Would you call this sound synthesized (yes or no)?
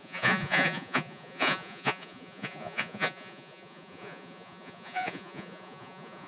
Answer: yes